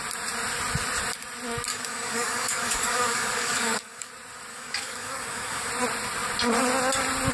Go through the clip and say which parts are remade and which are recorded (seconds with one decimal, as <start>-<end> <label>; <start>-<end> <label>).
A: 0.0-1.7 recorded; 1.7-4.1 remade; 4.1-4.5 recorded; 4.5-5.7 remade; 5.7-7.3 recorded